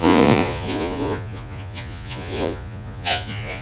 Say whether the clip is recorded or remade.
remade